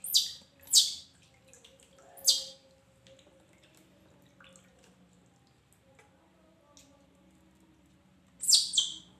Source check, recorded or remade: recorded